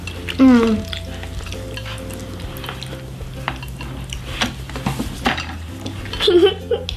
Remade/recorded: recorded